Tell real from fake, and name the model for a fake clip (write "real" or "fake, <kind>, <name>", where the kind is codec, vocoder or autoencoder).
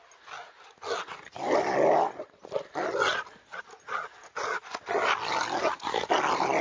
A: real